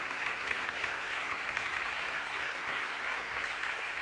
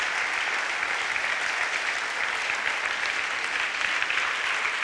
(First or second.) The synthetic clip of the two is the first